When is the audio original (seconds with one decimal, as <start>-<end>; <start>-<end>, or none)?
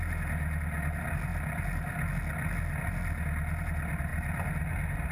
0.0-5.1